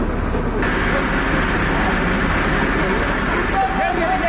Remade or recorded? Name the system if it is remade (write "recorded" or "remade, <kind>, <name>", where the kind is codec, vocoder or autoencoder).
recorded